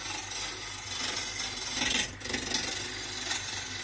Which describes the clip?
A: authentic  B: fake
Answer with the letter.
A